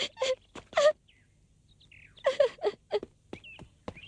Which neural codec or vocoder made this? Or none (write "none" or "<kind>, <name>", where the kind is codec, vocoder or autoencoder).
none